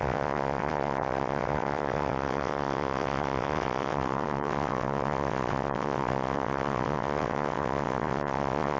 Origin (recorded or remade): remade